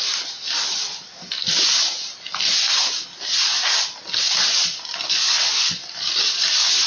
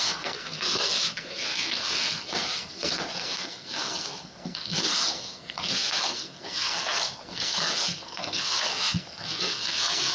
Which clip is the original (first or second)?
first